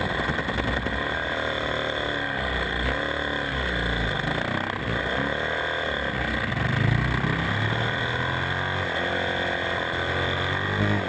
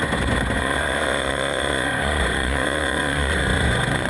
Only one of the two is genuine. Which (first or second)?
first